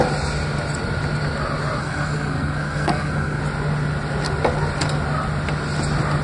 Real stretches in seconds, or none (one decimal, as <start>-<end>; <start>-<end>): 0.0-1.8; 3.4-6.2